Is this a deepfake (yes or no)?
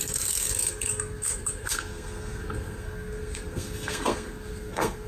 yes